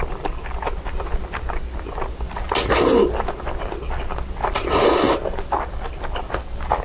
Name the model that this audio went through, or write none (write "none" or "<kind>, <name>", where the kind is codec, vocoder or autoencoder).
none